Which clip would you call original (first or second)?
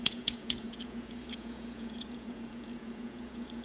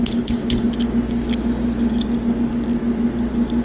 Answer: second